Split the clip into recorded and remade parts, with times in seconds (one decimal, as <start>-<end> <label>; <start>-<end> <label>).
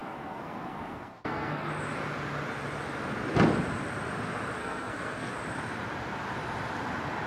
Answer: 0.0-1.7 remade; 1.7-4.6 recorded; 4.6-5.3 remade; 5.3-7.3 recorded